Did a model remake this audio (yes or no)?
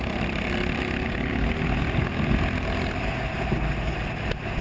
no